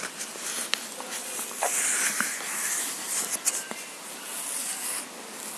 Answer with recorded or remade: recorded